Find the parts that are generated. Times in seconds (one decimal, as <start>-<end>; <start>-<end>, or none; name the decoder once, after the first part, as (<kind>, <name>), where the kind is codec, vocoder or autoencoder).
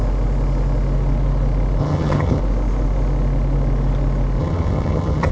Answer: 1.8-2.4 (vocoder, HiFi-GAN); 4.4-5.3